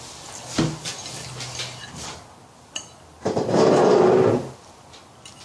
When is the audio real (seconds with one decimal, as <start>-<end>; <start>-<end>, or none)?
0.0-5.4